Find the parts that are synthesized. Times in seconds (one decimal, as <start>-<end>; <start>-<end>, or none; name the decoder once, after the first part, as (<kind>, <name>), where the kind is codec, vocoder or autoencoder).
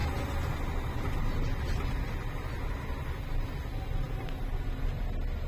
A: none